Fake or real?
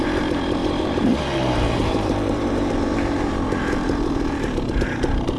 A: fake